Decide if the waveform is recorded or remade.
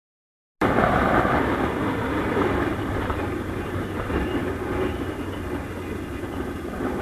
recorded